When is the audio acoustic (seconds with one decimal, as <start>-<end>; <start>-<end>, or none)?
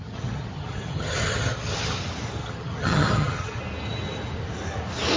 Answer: 2.0-2.4; 3.6-5.2